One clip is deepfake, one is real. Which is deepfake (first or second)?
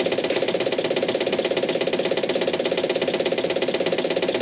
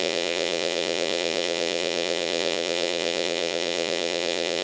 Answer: second